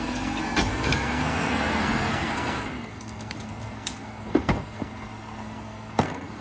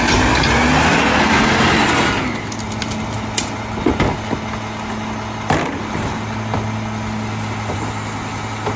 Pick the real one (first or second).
second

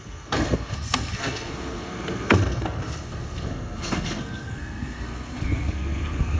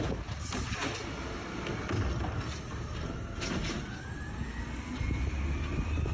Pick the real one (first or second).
second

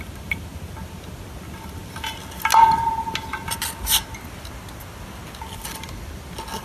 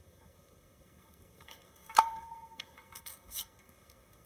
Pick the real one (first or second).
first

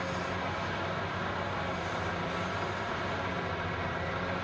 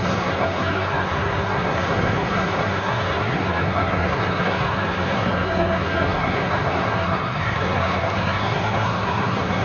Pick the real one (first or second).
first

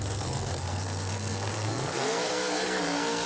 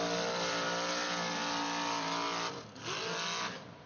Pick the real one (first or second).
second